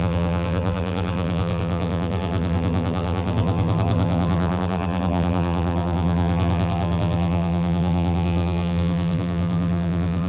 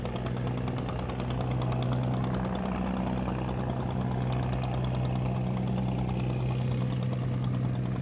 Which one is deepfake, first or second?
first